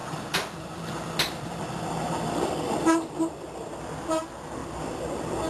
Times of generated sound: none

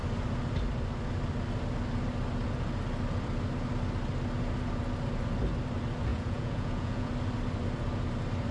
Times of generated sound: 6.1-7.1

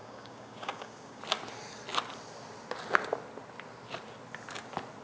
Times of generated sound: 0.0-1.2

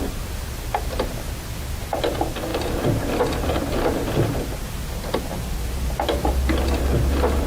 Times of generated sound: none